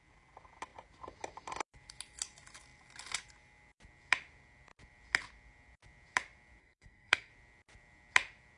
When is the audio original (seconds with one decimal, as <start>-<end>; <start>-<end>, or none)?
0.0-6.6; 7.3-8.6